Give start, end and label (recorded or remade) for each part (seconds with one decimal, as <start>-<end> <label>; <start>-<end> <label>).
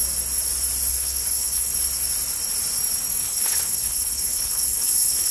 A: 0.0-0.9 recorded; 0.9-1.7 remade; 1.7-3.2 recorded; 3.2-5.3 remade